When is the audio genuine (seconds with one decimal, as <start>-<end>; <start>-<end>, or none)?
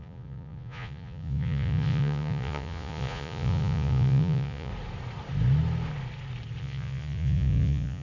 4.7-6.6